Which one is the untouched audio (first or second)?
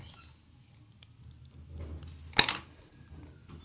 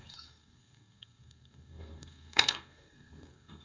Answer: first